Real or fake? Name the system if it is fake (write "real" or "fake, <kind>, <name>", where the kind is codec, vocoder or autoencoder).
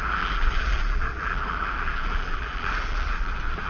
fake, vocoder, BigVGAN v2